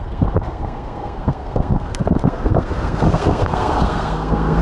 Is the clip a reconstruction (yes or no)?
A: yes